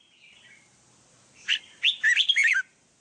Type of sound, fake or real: real